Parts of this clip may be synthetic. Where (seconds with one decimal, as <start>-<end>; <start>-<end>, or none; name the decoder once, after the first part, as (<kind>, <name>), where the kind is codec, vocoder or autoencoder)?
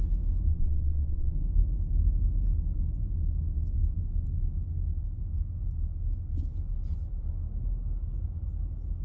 0.5-1.3 (vocoder, WaveNeXt)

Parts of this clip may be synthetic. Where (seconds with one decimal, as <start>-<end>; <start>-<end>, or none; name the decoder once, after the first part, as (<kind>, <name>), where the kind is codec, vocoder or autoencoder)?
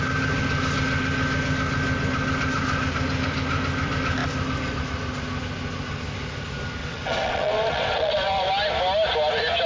6.8-8.4 (vocoder, WaveNeXt)